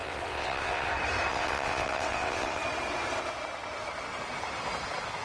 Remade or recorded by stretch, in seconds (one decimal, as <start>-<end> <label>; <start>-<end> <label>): 0.0-0.9 remade; 0.9-1.3 recorded; 1.3-2.6 remade; 2.6-5.2 recorded